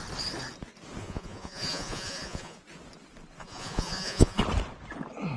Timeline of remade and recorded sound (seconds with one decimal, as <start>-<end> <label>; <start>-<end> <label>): 0.0-1.0 recorded; 1.0-2.6 remade; 2.6-3.4 recorded; 3.4-4.4 remade; 4.4-5.4 recorded